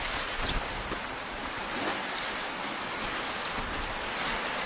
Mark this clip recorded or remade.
recorded